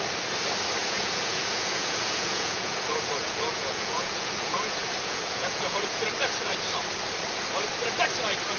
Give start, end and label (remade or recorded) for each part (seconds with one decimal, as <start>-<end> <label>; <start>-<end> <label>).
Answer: 0.0-0.8 recorded; 0.8-6.0 remade; 6.0-8.6 recorded